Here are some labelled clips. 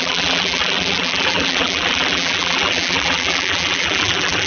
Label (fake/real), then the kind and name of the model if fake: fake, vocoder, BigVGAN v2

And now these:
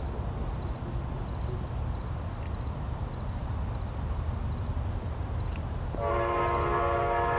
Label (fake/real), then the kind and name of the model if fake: real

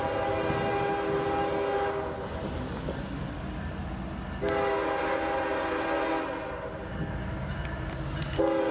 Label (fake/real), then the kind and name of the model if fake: real